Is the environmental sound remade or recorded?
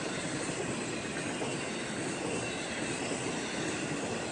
recorded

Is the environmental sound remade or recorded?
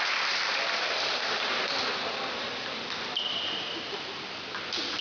recorded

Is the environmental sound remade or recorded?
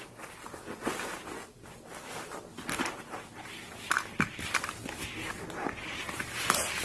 recorded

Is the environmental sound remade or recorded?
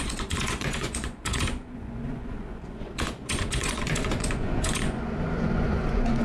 remade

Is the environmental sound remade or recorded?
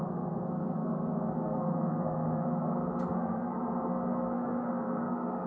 remade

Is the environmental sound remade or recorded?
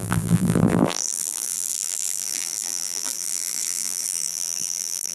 remade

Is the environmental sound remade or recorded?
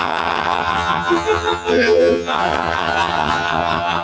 remade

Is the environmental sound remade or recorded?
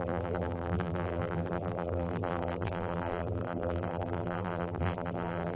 remade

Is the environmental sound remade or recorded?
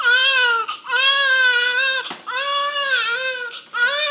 recorded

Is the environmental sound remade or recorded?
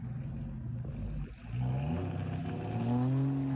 recorded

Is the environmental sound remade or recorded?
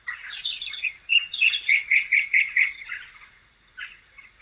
remade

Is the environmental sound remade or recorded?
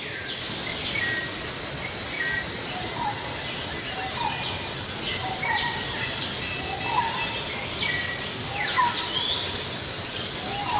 recorded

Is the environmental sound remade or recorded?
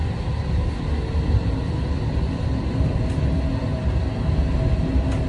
recorded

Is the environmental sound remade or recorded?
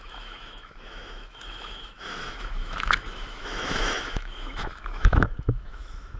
remade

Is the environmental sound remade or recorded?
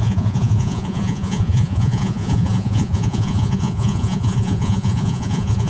remade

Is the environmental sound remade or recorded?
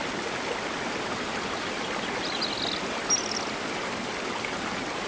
recorded